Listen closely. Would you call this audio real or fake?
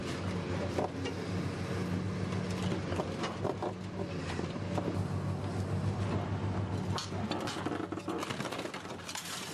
real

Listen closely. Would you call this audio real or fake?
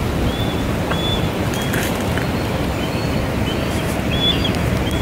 real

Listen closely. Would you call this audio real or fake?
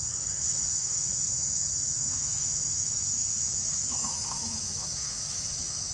fake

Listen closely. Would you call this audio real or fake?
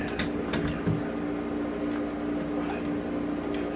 real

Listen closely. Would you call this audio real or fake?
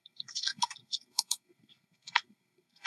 fake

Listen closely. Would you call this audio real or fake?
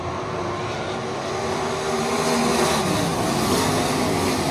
real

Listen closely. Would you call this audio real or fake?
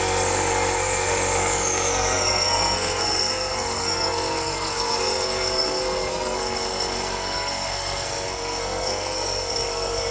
fake